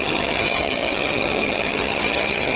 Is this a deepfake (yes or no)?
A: yes